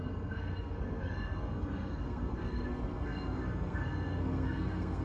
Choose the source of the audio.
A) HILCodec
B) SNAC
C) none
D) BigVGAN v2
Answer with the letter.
B